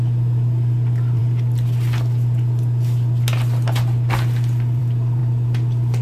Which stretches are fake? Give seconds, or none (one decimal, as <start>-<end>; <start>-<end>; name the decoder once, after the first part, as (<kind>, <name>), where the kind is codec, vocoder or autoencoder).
none